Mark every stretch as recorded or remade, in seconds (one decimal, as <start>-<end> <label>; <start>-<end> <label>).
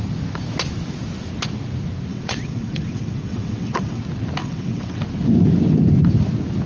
0.0-2.1 recorded; 2.1-4.0 remade; 4.0-4.4 recorded; 4.4-5.0 remade; 5.0-6.7 recorded